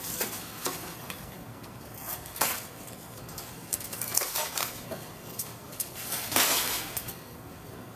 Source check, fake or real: fake